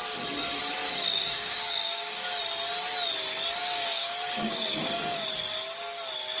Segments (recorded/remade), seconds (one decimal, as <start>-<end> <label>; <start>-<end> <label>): 0.0-0.9 recorded; 0.9-2.4 remade; 2.4-3.6 recorded; 3.6-5.2 remade; 5.2-6.4 recorded